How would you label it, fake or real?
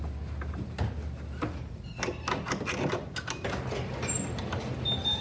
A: real